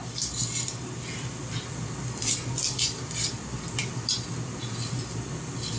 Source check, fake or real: real